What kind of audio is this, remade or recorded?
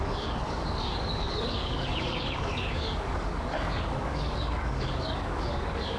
remade